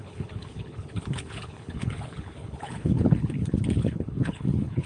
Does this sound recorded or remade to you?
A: remade